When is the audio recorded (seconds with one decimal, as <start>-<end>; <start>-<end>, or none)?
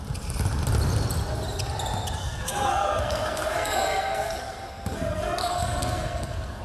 0.0-2.2